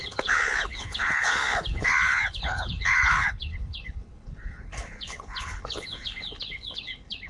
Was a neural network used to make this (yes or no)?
yes